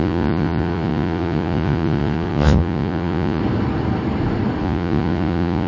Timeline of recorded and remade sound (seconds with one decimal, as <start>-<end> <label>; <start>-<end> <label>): 0.0-3.4 remade; 3.4-4.6 recorded; 4.6-5.7 remade